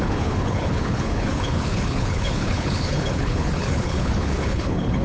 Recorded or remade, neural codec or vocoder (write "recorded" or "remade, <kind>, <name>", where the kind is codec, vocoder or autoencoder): remade, codec, HILCodec